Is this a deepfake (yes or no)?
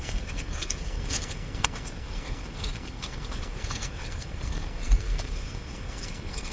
yes